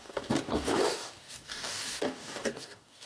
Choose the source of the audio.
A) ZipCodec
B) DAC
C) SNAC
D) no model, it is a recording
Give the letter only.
B